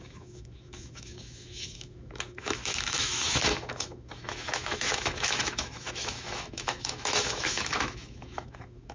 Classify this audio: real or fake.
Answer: fake